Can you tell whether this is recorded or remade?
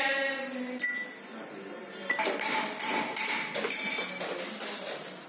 recorded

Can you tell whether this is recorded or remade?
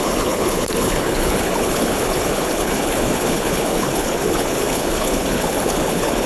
remade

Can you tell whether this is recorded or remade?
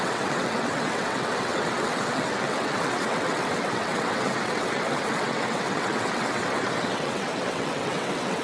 remade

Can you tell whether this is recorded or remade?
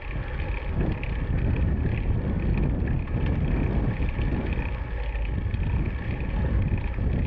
recorded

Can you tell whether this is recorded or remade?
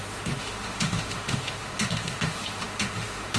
remade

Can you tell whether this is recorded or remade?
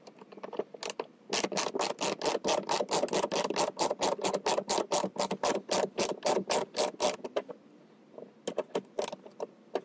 recorded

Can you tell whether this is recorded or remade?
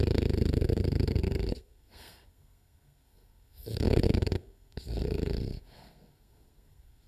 remade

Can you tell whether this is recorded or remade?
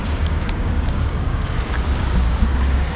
remade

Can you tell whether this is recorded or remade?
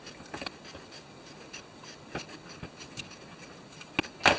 recorded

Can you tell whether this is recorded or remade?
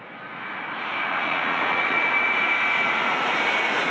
remade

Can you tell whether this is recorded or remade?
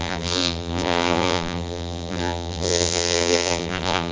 remade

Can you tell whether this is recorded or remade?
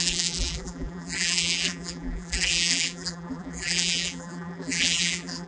remade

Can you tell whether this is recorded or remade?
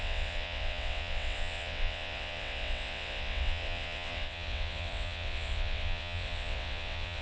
remade